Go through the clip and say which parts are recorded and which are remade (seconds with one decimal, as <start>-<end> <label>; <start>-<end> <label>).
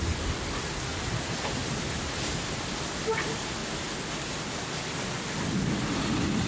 0.0-0.9 recorded; 0.9-2.5 remade; 2.5-6.5 recorded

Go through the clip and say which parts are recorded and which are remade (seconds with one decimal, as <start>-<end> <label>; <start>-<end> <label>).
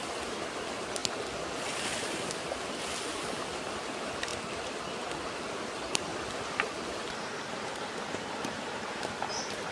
0.0-1.0 recorded; 1.0-2.8 remade; 2.8-4.3 recorded; 4.3-4.8 remade; 4.8-6.1 recorded; 6.1-6.6 remade; 6.6-9.7 recorded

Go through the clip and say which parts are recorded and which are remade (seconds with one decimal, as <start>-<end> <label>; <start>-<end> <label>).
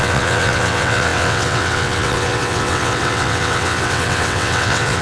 0.0-5.0 remade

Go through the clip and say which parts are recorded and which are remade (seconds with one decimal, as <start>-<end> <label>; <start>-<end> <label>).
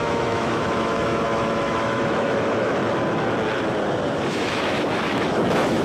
0.0-2.8 remade; 2.8-4.3 recorded; 4.3-5.8 remade